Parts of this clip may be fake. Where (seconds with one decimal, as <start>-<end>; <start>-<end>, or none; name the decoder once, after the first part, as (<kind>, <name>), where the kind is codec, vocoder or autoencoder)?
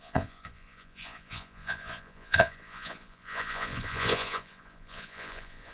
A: 0.0-5.7 (vocoder, Vocos)